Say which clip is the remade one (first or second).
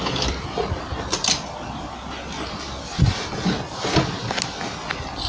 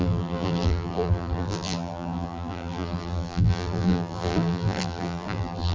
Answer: second